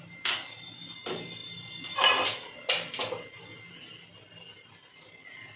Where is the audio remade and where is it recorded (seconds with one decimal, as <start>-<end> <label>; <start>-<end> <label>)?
0.0-5.6 recorded